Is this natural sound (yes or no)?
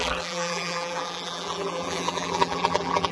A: no